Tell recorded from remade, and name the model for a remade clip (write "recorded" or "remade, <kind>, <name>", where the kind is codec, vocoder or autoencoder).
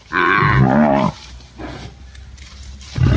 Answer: recorded